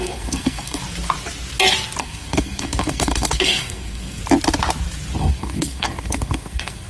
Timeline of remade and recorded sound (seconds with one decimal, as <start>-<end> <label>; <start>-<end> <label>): 0.0-0.8 remade; 0.8-2.0 recorded; 2.0-4.2 remade; 4.2-5.2 recorded; 5.2-6.9 remade